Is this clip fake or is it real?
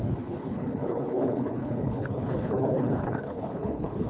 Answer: fake